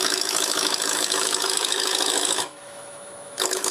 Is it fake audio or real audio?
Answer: fake